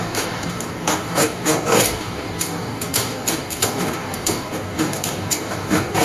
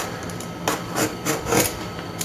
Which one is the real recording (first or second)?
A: second